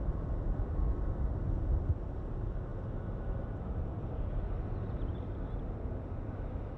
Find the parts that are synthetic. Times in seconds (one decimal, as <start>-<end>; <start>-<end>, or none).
none